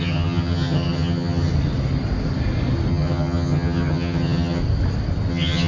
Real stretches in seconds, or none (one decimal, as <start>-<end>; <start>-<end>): 1.5-2.9; 4.6-5.3